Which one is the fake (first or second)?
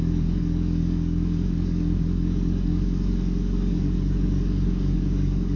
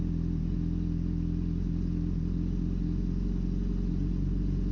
first